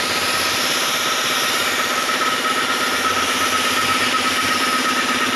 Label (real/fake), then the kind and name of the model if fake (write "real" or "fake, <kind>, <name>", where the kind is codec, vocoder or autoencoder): fake, vocoder, BigVGAN v2